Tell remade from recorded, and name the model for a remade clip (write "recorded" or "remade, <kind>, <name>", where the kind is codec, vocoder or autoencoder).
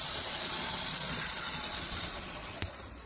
remade, vocoder, Vocos